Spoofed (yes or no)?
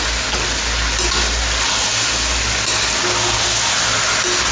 no